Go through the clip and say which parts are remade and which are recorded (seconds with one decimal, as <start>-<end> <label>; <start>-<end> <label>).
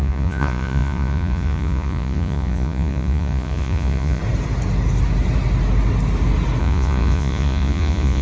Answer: 0.0-4.2 remade; 4.2-6.6 recorded; 6.6-8.2 remade